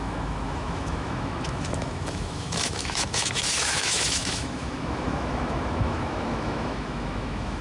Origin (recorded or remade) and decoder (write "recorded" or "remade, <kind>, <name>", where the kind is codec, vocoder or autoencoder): remade, autoencoder, DAC-VAE